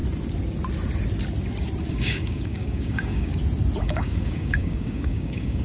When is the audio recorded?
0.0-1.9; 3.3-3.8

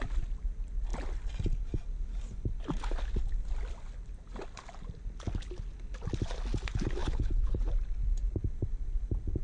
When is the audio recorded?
0.0-7.0; 7.7-9.4

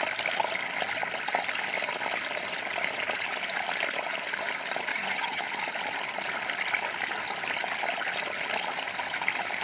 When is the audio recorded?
0.0-4.9; 5.4-9.6

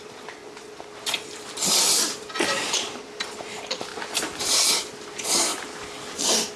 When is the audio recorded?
0.4-2.3; 3.9-4.9; 5.5-6.6

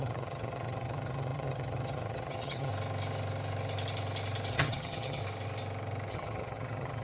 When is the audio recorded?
2.7-4.5; 5.2-6.1